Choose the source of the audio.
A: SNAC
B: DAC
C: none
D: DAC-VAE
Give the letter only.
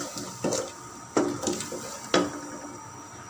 C